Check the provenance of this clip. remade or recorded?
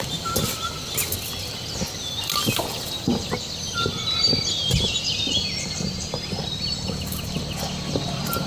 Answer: recorded